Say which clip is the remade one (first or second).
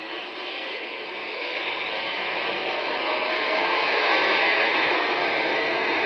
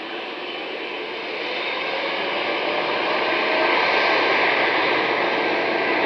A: first